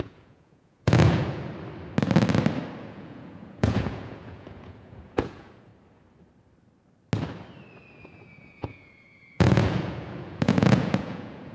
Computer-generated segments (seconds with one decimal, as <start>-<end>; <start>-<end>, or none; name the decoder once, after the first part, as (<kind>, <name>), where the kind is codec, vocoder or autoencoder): 0.0-1.5 (vocoder, Vocos); 2.8-5.7; 8.0-11.5